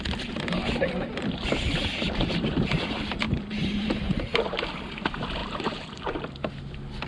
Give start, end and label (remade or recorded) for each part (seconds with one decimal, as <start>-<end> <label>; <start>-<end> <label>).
0.0-1.9 recorded; 1.9-4.7 remade; 4.7-5.4 recorded; 5.4-6.2 remade; 6.2-7.1 recorded